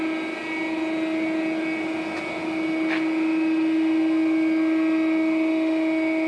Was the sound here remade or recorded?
recorded